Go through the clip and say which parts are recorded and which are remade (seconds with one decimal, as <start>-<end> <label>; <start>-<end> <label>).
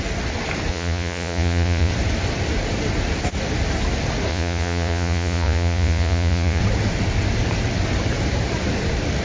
0.0-0.7 recorded; 0.7-1.9 remade; 1.9-4.3 recorded; 4.3-6.6 remade; 6.6-9.2 recorded